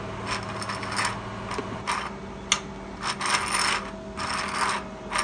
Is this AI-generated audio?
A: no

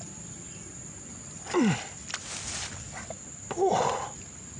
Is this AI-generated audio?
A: no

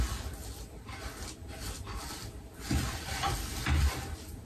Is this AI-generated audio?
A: no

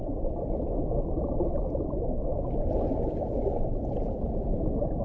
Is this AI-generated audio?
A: no